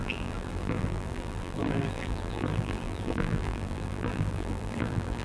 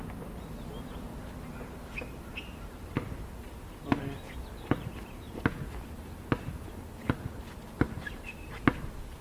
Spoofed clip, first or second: first